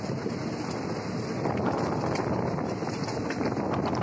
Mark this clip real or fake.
real